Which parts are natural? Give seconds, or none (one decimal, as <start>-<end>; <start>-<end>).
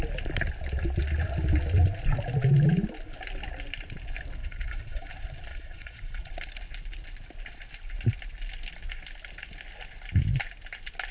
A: 0.0-4.4; 5.1-5.5; 6.3-11.1